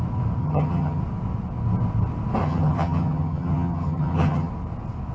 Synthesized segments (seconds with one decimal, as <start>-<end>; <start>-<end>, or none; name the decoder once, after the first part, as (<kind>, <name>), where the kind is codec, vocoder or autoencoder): 0.4-1.0 (vocoder, HiFi-GAN); 2.4-4.5